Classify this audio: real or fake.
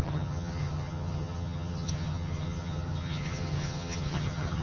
fake